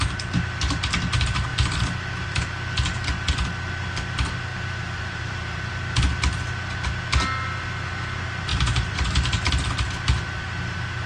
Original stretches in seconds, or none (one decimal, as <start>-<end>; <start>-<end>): 0.0-4.5; 5.6-8.5; 9.5-11.1